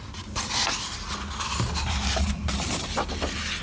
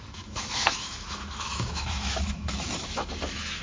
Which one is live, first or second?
first